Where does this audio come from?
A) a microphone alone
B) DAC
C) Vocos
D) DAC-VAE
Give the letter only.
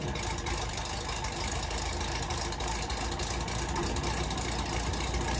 A